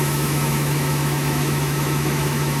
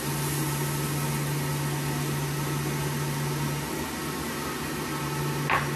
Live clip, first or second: second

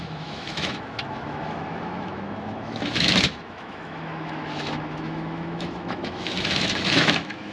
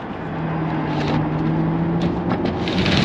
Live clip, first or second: second